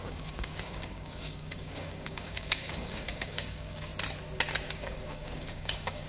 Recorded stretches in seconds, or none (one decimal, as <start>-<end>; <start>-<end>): 3.9-4.7